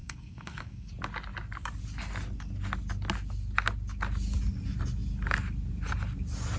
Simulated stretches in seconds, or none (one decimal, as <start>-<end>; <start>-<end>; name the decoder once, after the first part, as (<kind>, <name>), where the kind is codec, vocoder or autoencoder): 0.0-0.9 (codec, SNAC)